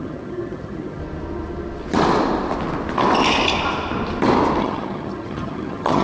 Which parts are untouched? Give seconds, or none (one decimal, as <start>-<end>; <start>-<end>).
1.0-4.6